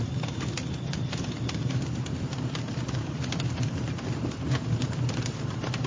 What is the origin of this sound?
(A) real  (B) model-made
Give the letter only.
B